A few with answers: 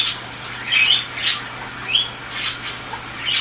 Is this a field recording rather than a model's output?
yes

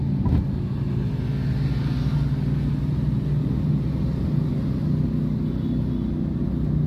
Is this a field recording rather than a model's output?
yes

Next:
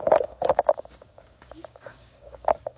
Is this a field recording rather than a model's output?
no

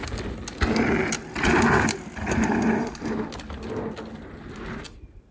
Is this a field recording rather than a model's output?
yes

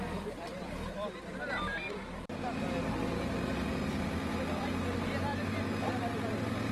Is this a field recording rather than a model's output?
yes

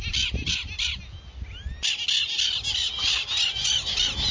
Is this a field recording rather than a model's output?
yes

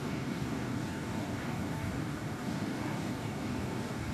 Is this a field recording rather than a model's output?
no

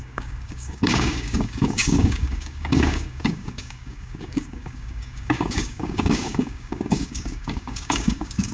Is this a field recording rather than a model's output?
no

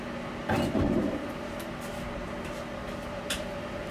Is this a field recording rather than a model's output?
yes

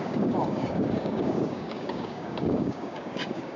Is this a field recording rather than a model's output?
no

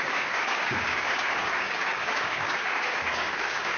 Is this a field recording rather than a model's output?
no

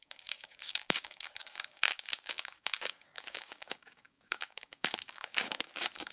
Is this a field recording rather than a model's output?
no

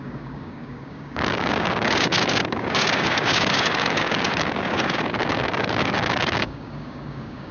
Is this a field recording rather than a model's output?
no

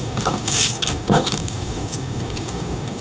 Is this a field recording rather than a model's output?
no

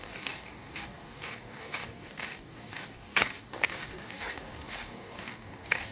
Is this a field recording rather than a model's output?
no